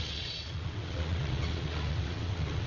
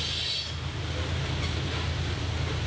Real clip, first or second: second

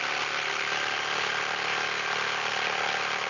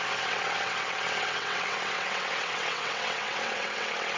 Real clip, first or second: first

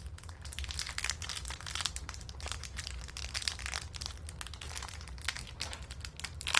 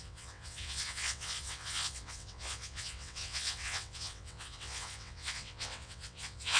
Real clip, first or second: first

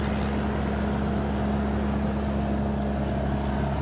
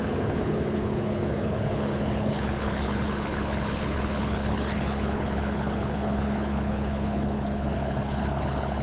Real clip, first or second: first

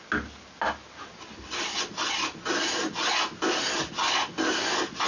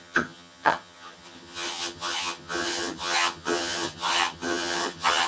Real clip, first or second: first